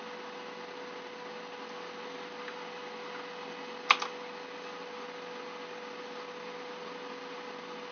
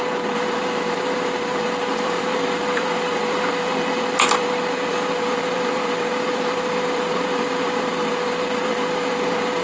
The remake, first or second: second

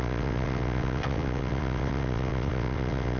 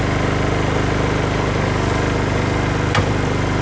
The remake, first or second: first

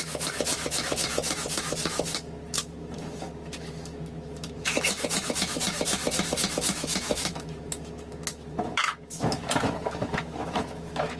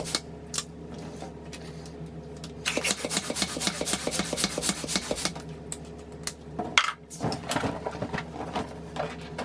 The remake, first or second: first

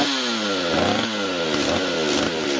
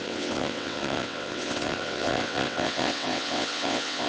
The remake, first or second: second